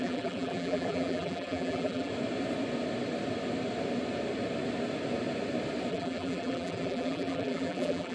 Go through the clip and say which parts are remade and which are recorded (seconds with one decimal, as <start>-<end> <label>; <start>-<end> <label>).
0.0-2.1 remade; 2.1-5.9 recorded; 5.9-8.1 remade